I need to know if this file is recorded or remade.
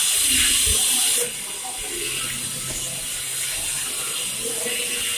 recorded